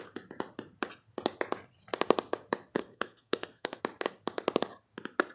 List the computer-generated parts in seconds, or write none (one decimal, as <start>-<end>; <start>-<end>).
2.8-3.8